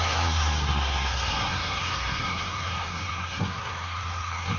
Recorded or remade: remade